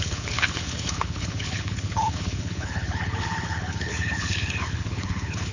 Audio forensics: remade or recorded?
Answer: remade